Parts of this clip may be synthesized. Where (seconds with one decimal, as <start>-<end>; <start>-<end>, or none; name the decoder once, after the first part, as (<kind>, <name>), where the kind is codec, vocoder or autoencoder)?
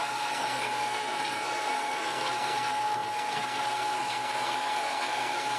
0.0-5.6 (codec, SNAC)